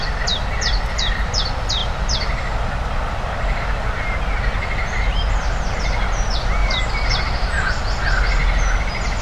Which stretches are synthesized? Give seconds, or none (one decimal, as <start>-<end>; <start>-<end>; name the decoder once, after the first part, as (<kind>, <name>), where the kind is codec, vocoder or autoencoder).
1.8-3.6 (vocoder, BigVGAN v2); 6.6-7.1